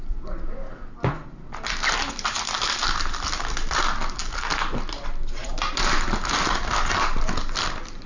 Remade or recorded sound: recorded